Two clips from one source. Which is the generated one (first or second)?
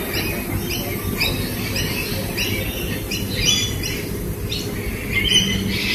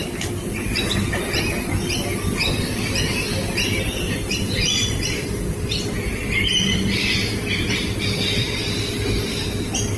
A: second